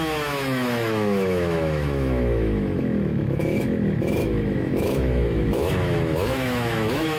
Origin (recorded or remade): remade